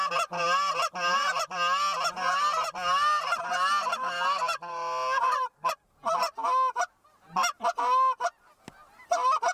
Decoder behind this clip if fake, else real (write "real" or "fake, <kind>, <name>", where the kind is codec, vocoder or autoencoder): real